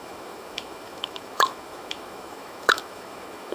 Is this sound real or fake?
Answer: fake